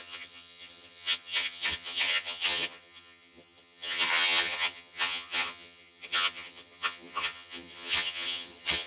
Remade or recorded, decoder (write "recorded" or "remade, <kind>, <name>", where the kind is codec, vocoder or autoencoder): remade, vocoder, HiFi-GAN